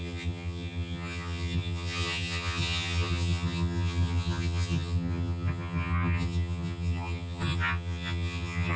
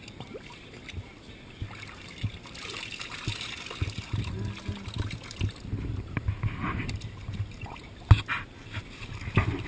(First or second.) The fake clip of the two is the first